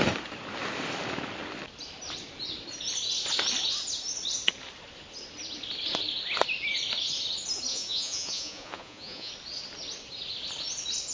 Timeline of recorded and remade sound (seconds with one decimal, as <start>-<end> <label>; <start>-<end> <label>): 0.0-7.7 recorded; 7.7-9.3 remade; 9.3-11.1 recorded